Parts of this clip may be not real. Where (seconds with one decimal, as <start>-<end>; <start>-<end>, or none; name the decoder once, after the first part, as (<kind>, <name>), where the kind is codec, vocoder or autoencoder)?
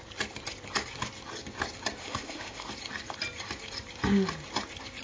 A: 2.0-2.7 (autoencoder, DAC-VAE)